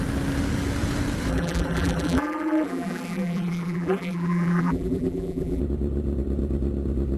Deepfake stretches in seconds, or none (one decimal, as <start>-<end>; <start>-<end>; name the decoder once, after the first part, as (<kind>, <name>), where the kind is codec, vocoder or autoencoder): 1.3-5.6 (vocoder, BigVGAN v2)